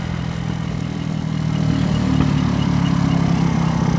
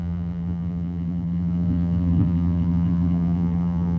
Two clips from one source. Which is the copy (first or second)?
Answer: second